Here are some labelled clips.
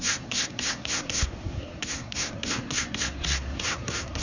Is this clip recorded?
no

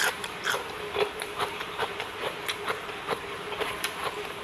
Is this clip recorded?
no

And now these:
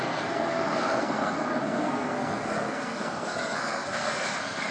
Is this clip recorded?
no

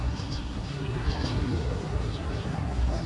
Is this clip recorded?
no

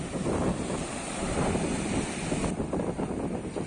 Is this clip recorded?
yes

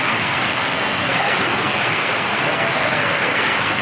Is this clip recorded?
no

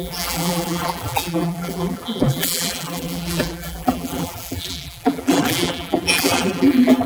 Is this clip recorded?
no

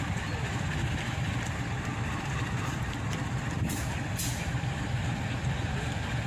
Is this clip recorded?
no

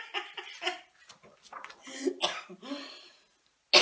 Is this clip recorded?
yes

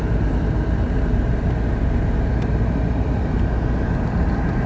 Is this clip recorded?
yes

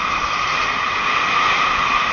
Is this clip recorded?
yes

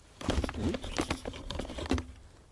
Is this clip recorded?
no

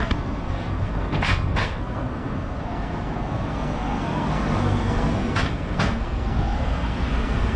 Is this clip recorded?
no